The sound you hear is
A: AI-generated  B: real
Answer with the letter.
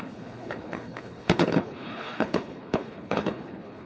A